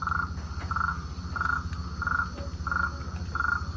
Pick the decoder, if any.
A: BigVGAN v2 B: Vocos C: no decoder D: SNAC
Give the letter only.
C